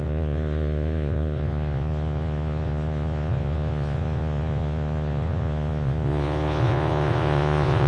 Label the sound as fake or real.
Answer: fake